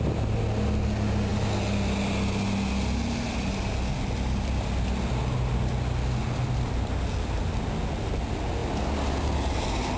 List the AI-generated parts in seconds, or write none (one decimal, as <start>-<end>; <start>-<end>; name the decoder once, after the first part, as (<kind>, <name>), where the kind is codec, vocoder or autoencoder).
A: none